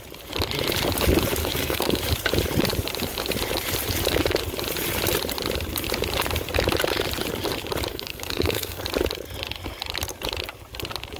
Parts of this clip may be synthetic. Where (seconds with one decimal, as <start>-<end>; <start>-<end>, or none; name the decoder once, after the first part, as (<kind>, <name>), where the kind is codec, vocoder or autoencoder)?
1.4-2.0 (codec, SNAC); 7.9-8.8